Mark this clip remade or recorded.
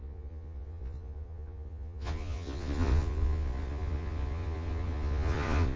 remade